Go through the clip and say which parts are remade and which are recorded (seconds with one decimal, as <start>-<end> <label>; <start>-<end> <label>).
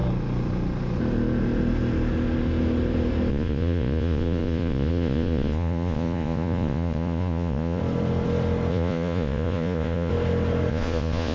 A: 0.0-3.3 recorded; 3.3-7.8 remade; 7.8-8.7 recorded; 8.7-10.1 remade; 10.1-10.7 recorded; 10.7-11.3 remade